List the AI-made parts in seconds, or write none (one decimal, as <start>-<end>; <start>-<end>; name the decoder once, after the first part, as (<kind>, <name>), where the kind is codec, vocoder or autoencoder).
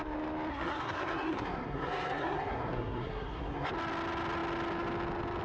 0.5-3.7 (codec, SNAC)